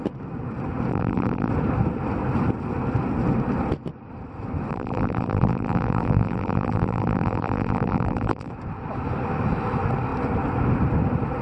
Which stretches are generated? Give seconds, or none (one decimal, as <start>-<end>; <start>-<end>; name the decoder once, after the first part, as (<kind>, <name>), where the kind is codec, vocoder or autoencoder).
0.9-1.5 (vocoder, BigVGAN v2); 4.7-8.5